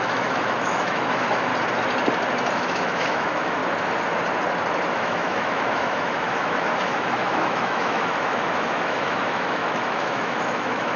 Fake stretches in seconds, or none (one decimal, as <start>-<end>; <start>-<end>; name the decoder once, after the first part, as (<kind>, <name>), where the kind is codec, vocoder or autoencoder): 0.0-1.5 (autoencoder, DAC-VAE); 2.5-3.6; 4.9-11.0